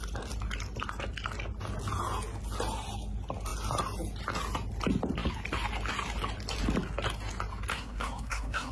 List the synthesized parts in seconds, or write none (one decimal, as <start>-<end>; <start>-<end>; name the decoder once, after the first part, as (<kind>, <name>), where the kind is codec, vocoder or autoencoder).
7.7-8.7 (codec, SNAC)